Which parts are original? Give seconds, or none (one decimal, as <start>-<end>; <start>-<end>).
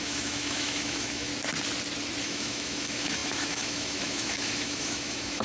1.3-2.2